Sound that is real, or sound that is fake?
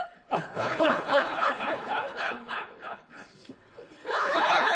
fake